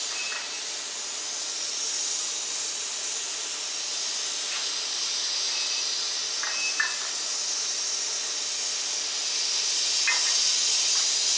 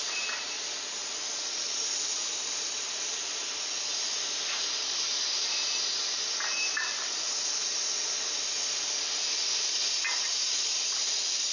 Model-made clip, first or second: second